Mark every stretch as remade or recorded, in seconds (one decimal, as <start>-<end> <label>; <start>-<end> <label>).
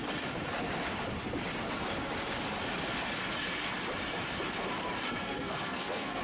0.0-5.2 recorded; 5.2-6.2 remade